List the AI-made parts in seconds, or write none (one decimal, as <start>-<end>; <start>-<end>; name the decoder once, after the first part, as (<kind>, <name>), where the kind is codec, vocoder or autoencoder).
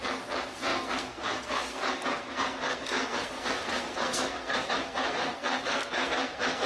0.0-6.7 (codec, SNAC)